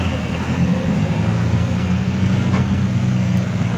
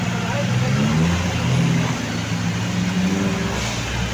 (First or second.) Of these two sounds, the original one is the second